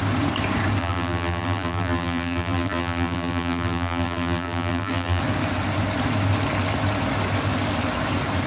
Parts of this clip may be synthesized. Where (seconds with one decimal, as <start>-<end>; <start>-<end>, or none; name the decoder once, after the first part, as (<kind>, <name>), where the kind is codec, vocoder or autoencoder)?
0.8-5.2 (vocoder, BigVGAN v2)